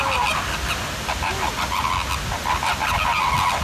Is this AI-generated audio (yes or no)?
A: no